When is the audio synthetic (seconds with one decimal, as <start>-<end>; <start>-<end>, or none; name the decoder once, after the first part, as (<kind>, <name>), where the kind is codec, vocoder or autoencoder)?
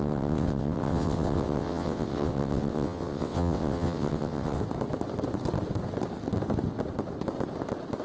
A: 0.0-4.6 (vocoder, WaveNeXt)